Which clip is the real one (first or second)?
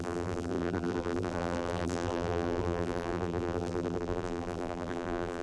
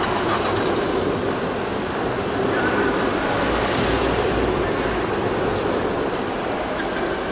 second